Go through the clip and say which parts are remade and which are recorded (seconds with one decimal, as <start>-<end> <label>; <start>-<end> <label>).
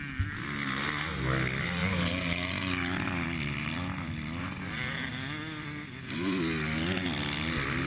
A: 0.0-1.8 recorded; 1.8-2.6 remade; 2.6-7.9 recorded